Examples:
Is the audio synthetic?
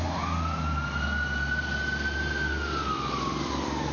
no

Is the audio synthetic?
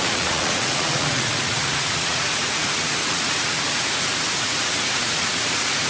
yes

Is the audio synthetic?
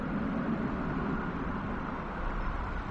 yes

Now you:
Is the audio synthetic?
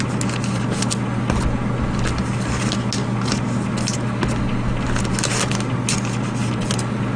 no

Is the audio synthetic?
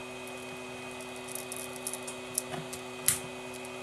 no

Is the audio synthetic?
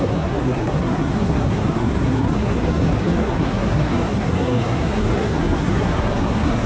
yes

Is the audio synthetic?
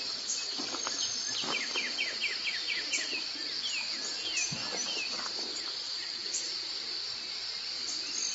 no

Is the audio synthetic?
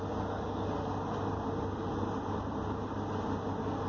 no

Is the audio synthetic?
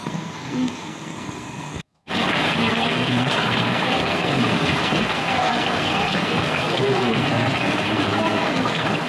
yes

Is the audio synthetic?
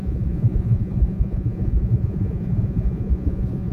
yes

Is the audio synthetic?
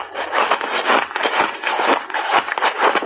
no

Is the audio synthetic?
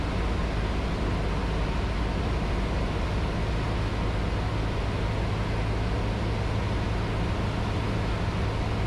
no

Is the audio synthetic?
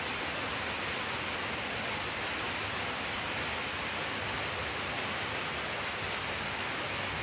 no